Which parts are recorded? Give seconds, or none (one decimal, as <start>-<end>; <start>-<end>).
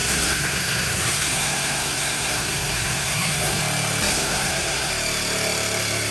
3.6-4.1; 4.9-6.1